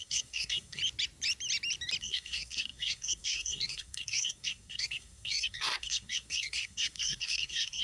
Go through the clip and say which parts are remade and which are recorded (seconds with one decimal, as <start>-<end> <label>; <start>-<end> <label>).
0.0-0.8 remade; 0.8-2.0 recorded; 2.0-7.8 remade